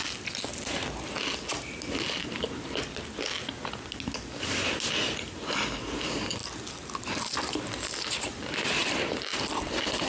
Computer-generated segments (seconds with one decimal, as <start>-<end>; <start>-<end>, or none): none